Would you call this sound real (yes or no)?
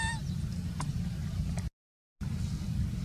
yes